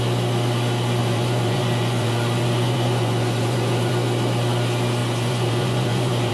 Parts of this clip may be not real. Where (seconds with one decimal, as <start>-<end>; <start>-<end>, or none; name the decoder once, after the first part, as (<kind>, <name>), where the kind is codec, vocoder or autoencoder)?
1.0-3.9 (vocoder, Vocos); 5.0-6.3